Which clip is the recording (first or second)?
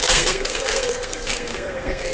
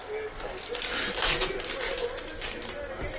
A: second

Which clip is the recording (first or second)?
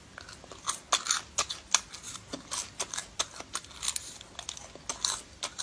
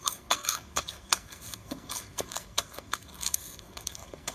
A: first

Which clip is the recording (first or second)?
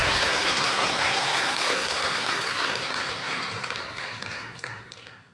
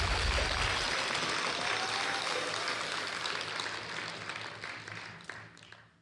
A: second